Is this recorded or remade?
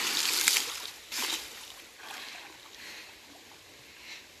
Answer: recorded